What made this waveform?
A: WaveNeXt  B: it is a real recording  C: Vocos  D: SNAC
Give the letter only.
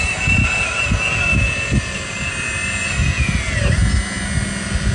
B